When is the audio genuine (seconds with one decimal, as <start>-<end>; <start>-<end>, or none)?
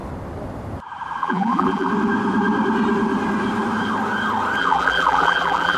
0.0-1.2; 1.9-4.6